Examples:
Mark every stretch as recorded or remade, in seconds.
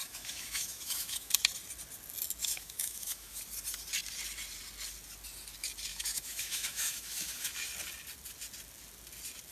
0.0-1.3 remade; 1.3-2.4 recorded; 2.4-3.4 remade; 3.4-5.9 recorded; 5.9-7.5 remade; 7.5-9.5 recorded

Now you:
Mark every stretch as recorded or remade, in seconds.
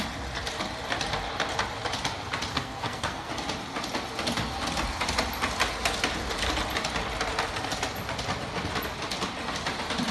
0.0-2.5 recorded; 2.5-3.3 remade; 3.3-10.1 recorded